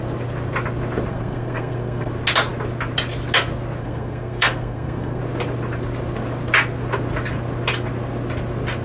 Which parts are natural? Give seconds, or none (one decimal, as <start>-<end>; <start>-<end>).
0.0-1.1; 2.1-3.8; 5.2-8.8